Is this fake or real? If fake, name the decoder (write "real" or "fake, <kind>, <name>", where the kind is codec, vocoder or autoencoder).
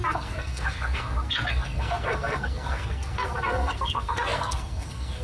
fake, codec, SNAC